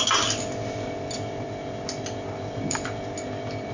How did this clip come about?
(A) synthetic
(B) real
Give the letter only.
B